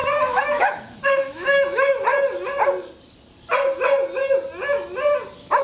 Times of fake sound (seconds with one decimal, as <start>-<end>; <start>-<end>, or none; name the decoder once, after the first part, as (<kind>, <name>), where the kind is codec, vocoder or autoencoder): 0.0-2.1 (autoencoder, DAC-VAE)